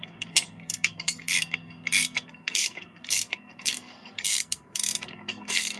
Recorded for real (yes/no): no